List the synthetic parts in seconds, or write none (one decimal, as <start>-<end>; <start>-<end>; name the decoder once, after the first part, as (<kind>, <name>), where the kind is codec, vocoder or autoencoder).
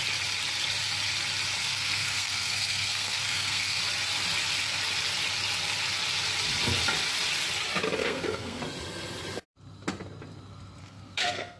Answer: 1.6-3.8 (codec, SNAC); 8.0-8.6; 10.8-11.6